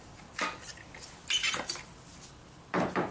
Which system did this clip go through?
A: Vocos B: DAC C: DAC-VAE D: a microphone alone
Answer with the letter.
D